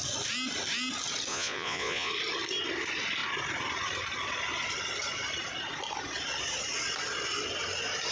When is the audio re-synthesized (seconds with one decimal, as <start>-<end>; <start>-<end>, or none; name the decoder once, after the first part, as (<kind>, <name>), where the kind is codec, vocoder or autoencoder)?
1.3-2.1 (vocoder, Vocos)